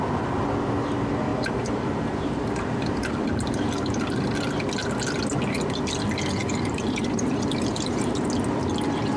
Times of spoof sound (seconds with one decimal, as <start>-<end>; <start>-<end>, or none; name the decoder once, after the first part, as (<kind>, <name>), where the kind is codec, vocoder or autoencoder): 1.3-4.0 (vocoder, BigVGAN v2); 6.4-8.2